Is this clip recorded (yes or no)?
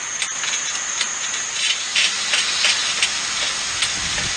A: yes